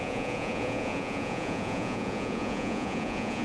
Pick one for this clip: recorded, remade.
remade